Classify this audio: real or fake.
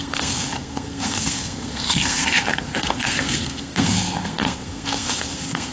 fake